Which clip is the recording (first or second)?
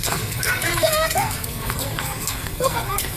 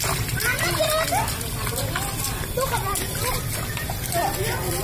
second